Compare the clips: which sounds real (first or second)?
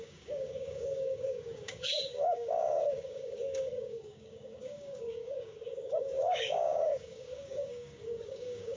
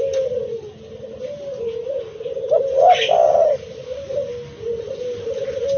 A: second